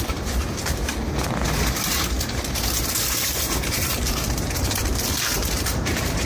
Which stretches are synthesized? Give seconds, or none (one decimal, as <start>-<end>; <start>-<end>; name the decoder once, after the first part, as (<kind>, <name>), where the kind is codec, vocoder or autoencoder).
0.0-0.9 (vocoder, BigVGAN v2); 2.9-6.3